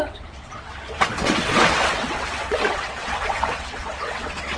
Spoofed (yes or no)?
yes